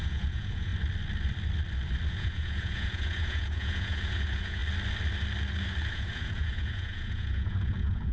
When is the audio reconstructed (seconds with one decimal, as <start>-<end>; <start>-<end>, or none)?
0.0-0.7; 2.1-4.6; 5.9-8.1